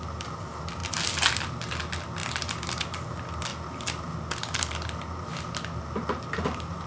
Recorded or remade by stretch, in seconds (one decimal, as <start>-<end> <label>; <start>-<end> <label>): 0.0-6.9 recorded